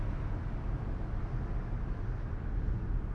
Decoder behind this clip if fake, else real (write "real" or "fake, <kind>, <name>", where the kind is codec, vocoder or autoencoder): real